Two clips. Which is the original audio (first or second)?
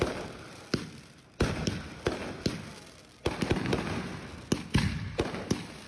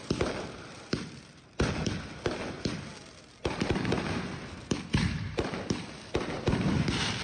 first